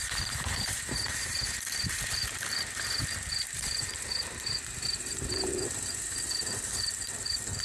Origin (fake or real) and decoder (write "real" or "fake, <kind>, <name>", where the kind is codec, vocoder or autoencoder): fake, vocoder, BigVGAN v2